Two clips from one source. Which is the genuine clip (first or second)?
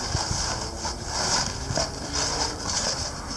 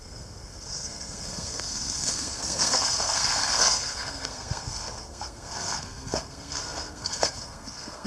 first